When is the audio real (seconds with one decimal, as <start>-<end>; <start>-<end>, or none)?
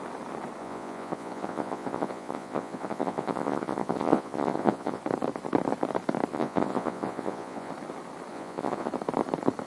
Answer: 0.0-0.6; 5.0-6.3; 7.7-8.3; 8.9-9.7